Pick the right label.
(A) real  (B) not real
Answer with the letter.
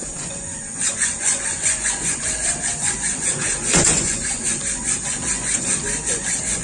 B